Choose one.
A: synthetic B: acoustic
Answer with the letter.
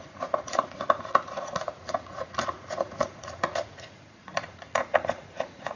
A